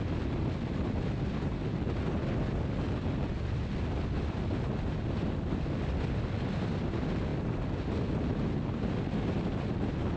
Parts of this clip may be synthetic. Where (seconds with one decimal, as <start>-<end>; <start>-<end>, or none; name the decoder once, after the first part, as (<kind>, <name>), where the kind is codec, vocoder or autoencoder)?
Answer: none

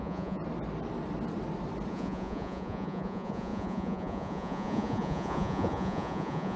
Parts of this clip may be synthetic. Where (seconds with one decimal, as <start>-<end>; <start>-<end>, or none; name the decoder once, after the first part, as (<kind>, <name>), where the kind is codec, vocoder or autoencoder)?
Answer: 0.0-0.4 (vocoder, Vocos); 1.9-6.6

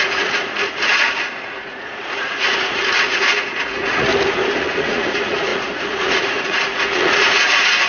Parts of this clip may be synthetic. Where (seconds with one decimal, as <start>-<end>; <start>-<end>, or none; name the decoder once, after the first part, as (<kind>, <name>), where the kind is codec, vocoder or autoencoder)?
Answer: 0.0-4.1 (vocoder, Vocos); 4.6-7.9